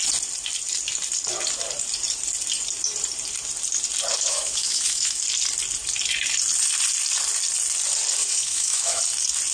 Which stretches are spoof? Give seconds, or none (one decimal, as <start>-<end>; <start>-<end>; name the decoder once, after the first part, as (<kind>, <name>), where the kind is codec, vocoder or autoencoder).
4.3-5.2 (autoencoder, DAC-VAE); 8.2-9.0